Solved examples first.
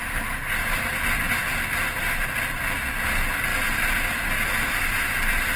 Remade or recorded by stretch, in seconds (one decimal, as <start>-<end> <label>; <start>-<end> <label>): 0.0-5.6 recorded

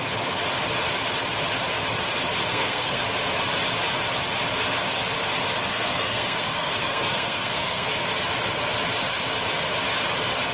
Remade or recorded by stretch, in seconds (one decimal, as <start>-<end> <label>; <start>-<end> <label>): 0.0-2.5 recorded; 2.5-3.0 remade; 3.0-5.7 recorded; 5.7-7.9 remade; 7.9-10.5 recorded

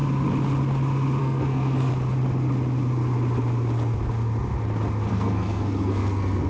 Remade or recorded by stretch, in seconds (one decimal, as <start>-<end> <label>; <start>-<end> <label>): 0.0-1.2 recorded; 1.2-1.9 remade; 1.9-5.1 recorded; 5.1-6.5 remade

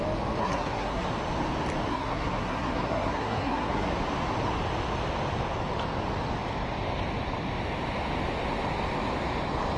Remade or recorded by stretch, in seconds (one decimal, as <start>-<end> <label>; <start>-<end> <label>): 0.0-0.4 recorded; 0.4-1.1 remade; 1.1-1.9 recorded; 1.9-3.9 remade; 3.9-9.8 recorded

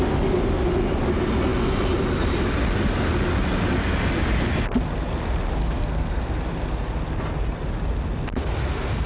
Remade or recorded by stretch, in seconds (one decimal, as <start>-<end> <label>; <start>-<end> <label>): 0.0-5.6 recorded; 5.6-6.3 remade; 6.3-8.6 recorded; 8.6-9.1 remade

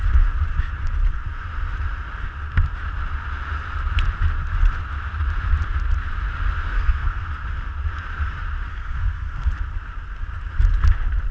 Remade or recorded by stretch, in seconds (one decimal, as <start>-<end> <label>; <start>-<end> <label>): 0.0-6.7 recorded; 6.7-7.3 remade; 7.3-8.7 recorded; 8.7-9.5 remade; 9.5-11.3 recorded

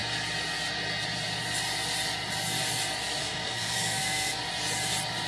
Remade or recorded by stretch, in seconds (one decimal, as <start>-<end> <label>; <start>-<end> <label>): 0.0-3.2 recorded; 3.2-4.4 remade; 4.4-5.3 recorded